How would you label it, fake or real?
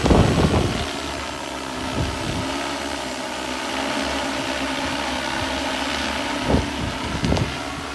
real